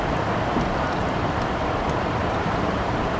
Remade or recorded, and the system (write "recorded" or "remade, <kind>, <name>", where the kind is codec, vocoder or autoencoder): remade, vocoder, BigVGAN v2